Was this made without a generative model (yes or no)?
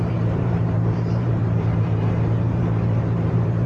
no